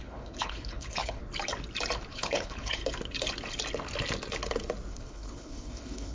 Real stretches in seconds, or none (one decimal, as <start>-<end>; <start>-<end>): 1.2-2.1; 2.8-4.9